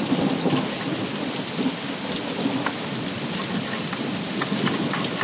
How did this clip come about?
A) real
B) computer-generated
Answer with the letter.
A